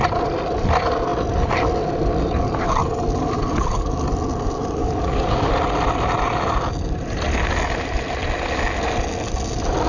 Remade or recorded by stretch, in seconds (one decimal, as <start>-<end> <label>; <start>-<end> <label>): 0.0-4.8 recorded; 4.8-5.5 remade; 5.5-9.9 recorded